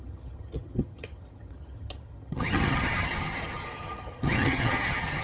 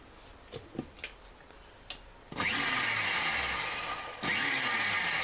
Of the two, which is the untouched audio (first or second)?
second